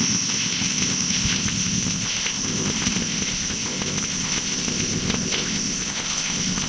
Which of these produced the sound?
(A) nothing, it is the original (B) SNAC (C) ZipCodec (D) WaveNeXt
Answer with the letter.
C